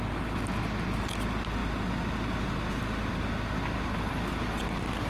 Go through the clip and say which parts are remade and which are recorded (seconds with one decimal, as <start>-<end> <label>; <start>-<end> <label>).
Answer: 0.0-5.1 recorded